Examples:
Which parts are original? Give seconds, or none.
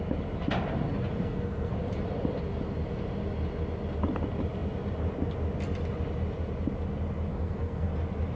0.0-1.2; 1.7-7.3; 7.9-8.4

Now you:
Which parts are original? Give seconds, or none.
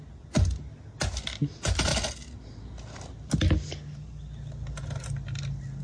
0.0-5.8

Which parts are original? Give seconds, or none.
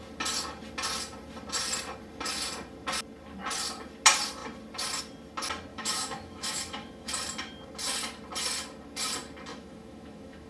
0.0-5.7; 7.1-9.5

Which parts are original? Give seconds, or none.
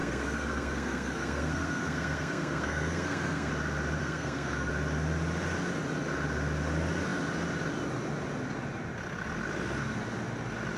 3.5-4.0; 4.7-10.8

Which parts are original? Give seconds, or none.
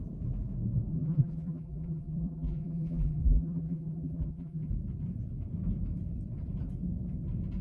0.0-0.9; 4.7-7.6